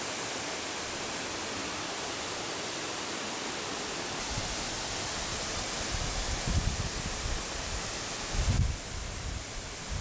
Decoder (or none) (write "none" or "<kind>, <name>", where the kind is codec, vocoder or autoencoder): none